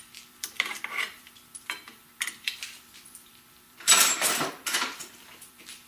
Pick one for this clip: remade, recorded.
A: remade